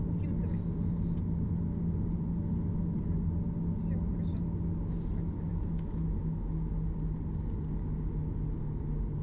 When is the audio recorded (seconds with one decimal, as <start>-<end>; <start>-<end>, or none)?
0.0-5.5; 6.7-9.2